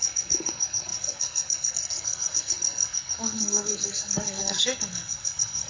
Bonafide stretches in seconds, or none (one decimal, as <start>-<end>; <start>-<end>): none